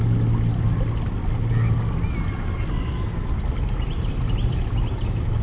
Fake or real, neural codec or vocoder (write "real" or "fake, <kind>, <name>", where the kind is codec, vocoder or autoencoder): real